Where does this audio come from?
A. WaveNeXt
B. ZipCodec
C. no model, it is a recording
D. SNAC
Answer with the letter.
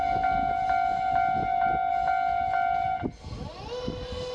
C